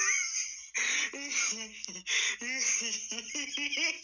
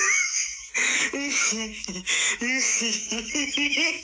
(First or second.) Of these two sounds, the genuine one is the first